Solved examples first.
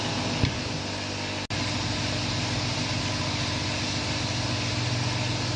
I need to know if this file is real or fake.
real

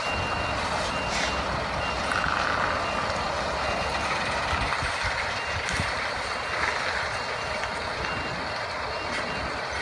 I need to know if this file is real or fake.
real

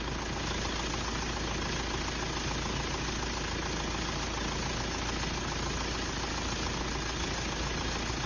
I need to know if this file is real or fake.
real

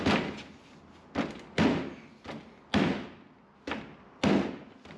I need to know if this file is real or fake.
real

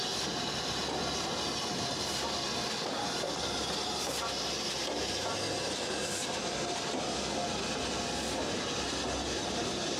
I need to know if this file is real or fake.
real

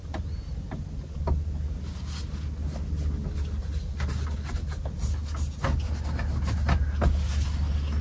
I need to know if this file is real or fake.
real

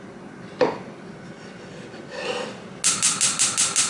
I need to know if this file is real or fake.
real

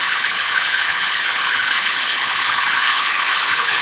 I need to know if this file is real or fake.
fake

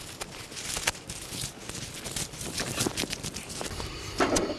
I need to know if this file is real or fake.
real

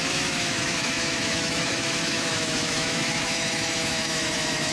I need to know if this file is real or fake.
fake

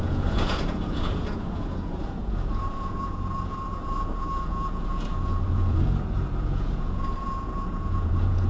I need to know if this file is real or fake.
fake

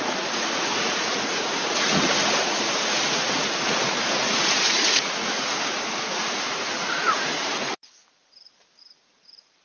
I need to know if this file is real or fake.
fake